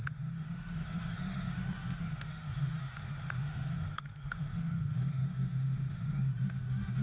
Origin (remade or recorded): remade